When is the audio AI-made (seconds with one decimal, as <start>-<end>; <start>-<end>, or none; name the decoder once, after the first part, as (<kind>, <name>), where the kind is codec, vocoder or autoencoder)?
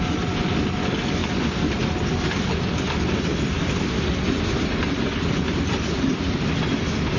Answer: none